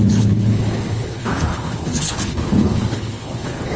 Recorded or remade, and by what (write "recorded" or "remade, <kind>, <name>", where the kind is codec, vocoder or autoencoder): remade, codec, HILCodec